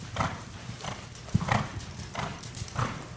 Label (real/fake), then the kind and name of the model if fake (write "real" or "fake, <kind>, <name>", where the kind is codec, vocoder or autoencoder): real